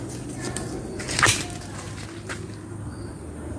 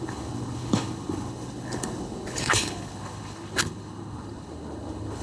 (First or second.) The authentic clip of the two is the first